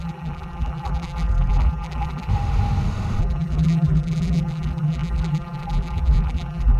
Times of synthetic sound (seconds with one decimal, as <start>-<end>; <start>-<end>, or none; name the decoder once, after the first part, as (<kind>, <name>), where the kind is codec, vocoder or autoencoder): 0.0-2.3 (vocoder, BigVGAN v2); 3.2-6.8